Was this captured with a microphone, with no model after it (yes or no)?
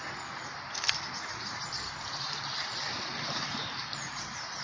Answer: no